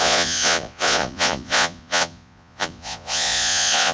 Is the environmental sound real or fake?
fake